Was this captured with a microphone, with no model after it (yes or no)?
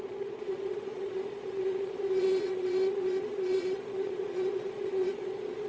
no